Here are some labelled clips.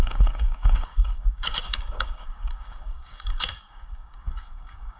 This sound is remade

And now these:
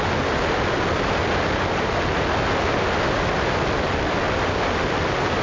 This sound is recorded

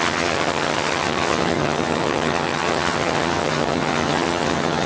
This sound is remade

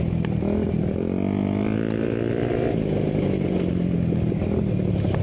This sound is recorded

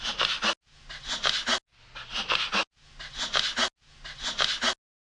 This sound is recorded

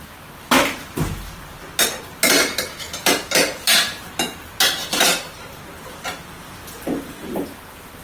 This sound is recorded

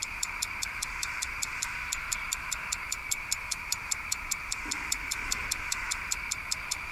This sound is remade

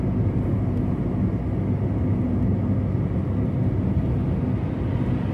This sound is recorded